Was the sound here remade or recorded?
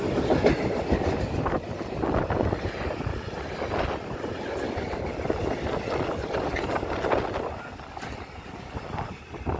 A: recorded